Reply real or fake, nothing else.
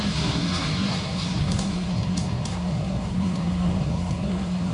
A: fake